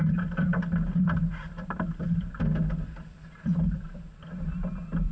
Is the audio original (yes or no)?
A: yes